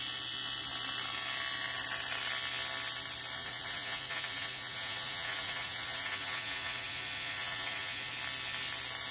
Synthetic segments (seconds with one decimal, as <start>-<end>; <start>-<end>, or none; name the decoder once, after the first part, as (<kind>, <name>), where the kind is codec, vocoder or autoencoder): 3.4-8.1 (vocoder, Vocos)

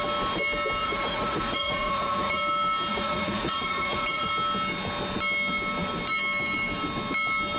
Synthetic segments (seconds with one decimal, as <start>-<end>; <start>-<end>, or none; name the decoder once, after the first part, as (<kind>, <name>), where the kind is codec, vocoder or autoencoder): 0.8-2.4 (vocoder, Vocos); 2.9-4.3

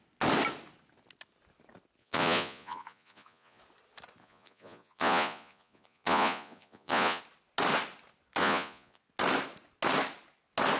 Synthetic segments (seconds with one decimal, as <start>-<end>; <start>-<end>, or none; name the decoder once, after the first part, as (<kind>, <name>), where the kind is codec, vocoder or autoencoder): 2.0-3.6 (vocoder, Vocos); 4.2-7.2; 8.4-9.0

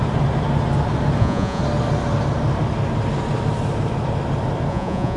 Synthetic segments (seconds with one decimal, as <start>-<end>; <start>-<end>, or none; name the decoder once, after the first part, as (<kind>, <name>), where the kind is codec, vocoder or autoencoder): 1.2-1.6 (vocoder, Vocos); 4.7-5.2

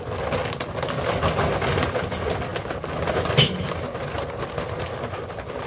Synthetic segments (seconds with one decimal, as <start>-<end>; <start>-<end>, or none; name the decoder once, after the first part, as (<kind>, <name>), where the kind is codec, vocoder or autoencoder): none